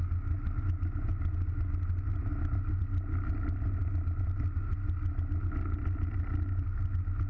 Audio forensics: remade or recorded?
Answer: recorded